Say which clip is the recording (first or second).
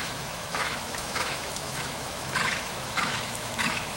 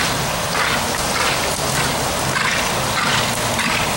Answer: second